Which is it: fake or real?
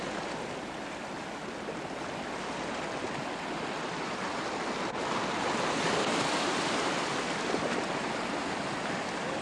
real